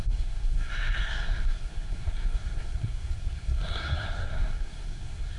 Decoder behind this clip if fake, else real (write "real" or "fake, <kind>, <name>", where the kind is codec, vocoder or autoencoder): fake, codec, SNAC